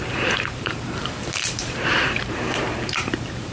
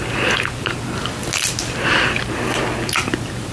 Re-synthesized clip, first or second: first